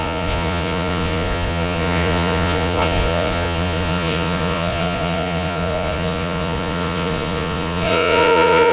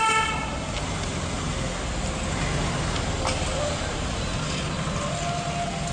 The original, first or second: second